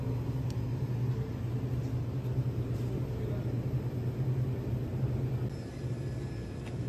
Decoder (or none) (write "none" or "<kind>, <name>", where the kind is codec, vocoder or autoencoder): none